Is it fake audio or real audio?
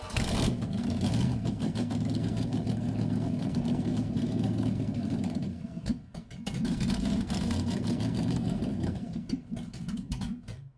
fake